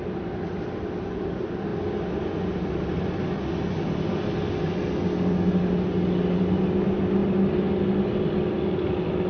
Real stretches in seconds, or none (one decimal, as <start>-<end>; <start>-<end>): 0.0-9.3